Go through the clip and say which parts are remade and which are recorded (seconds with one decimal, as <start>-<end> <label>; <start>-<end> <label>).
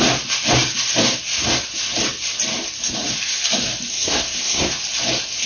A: 0.0-3.9 recorded; 3.9-4.7 remade; 4.7-5.5 recorded